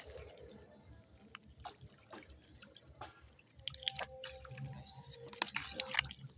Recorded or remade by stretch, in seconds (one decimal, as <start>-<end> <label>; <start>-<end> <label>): 0.0-6.4 recorded